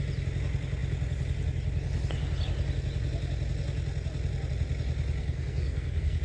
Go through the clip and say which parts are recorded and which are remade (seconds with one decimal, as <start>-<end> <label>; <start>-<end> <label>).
0.0-5.2 recorded; 5.2-6.2 remade